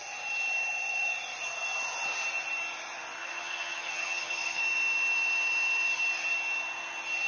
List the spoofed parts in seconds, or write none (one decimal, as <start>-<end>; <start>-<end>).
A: 3.2-4.6